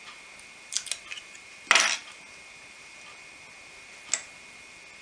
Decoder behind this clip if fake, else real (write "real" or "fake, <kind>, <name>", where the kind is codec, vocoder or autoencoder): real